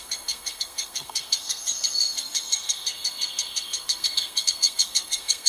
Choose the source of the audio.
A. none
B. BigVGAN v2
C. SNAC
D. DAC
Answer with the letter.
C